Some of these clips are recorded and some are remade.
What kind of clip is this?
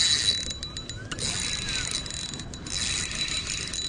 recorded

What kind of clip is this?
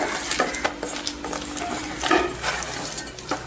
recorded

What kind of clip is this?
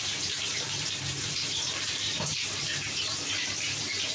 remade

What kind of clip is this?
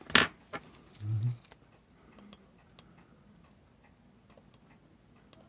recorded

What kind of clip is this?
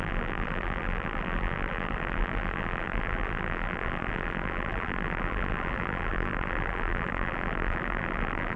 remade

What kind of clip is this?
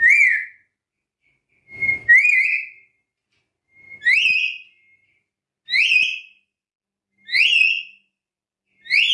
recorded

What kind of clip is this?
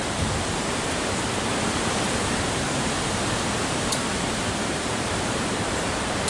remade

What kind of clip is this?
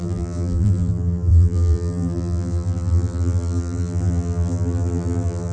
remade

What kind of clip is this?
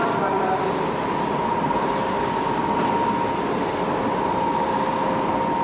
recorded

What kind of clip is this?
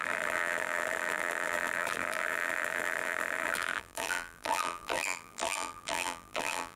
remade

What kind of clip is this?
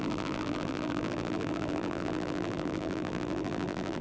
remade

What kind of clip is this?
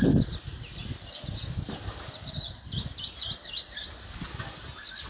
recorded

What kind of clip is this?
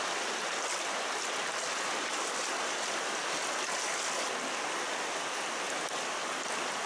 recorded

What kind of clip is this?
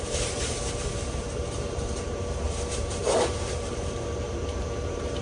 remade